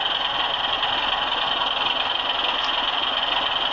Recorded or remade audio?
recorded